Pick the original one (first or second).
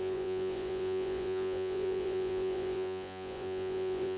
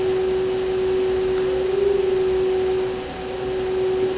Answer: second